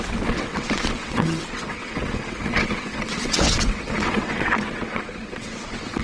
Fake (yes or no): yes